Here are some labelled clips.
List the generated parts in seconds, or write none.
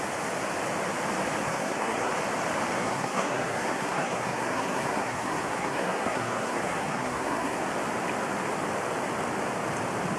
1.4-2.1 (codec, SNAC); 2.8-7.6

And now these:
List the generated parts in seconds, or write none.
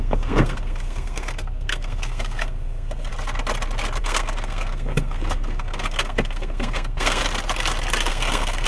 0.0-3.1 (codec, SNAC); 4.0-7.2; 8.1-8.7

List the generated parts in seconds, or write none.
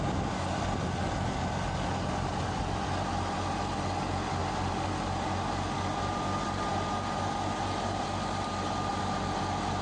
none